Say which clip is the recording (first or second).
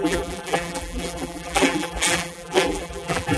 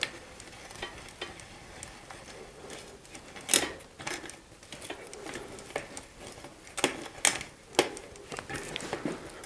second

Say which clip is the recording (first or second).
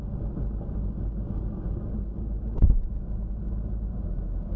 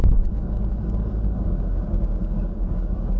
first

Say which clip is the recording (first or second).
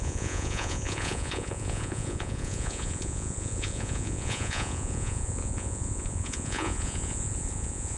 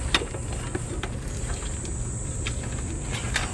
second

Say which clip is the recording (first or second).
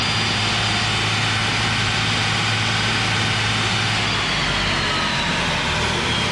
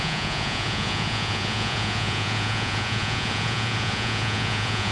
first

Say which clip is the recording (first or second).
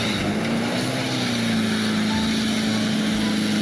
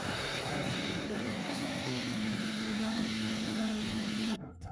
first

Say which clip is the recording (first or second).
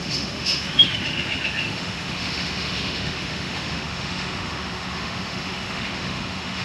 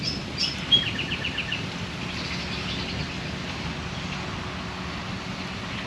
second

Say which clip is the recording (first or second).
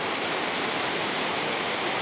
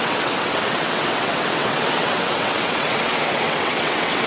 first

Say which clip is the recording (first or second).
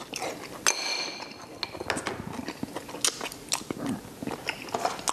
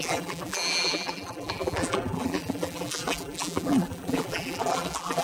first